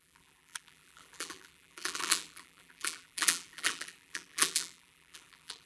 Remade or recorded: remade